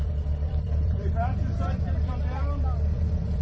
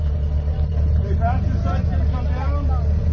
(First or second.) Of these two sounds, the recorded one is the second